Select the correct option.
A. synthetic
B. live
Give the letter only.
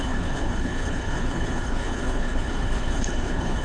A